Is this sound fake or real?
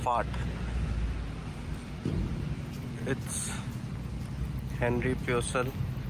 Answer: real